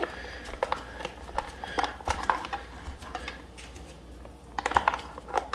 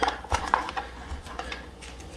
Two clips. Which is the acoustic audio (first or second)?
first